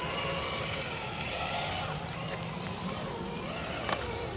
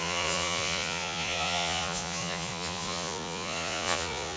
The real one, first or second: first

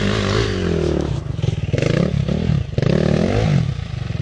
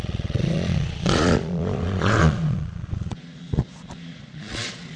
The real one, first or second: first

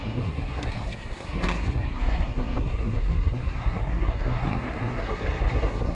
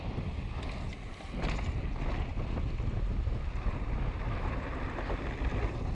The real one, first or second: second